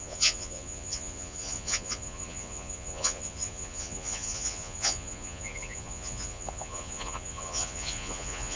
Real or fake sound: fake